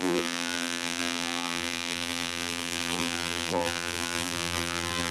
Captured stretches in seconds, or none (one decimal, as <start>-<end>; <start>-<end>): none

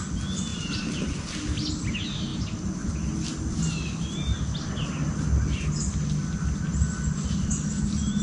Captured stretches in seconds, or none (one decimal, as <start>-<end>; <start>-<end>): 0.0-2.3; 2.9-8.2

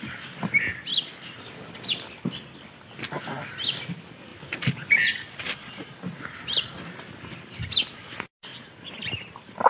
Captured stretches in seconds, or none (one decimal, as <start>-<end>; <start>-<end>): 0.0-4.3; 5.6-9.7

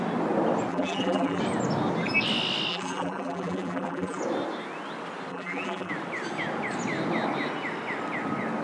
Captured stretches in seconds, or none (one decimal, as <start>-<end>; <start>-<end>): 0.0-0.7; 1.4-2.7; 4.2-5.3; 5.9-8.6